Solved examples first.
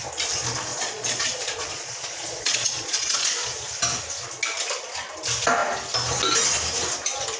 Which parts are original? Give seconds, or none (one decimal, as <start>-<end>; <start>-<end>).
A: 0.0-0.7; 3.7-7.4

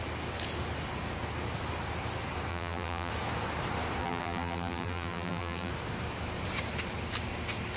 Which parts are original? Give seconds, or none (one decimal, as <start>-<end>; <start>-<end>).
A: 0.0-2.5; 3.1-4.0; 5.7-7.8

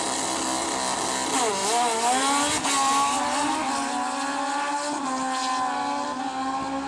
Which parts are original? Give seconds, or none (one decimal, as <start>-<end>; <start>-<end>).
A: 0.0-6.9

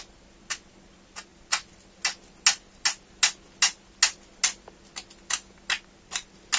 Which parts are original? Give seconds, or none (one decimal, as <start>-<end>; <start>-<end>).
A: 0.0-6.6

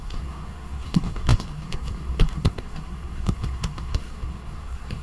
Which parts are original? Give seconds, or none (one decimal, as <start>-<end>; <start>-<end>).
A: none

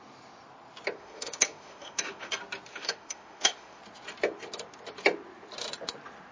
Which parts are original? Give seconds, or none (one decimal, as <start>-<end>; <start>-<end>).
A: 0.0-1.0; 2.3-2.7; 3.8-6.3